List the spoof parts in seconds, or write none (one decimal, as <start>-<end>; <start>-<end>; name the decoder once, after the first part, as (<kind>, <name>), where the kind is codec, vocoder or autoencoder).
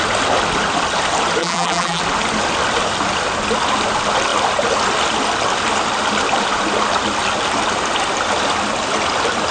1.4-2.0 (vocoder, BigVGAN v2)